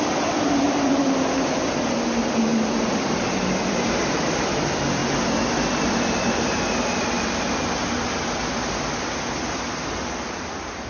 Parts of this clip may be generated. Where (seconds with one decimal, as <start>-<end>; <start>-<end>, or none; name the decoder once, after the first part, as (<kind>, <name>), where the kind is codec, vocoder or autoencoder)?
0.0-5.0 (vocoder, BigVGAN v2); 9.4-10.9